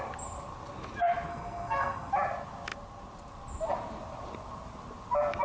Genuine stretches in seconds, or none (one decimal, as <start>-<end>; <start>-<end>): 0.0-1.3; 2.1-5.4